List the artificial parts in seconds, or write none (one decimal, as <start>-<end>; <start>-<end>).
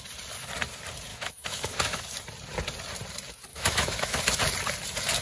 1.1-2.0; 3.5-4.2